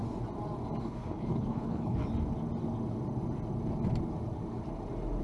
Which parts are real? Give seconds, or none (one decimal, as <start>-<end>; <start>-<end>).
0.0-0.8; 2.0-5.2